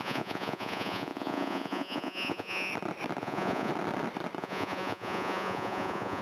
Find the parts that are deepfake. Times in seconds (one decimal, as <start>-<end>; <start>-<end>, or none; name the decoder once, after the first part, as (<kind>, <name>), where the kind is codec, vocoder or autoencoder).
0.0-2.7 (vocoder, Vocos); 3.2-3.7; 4.4-6.2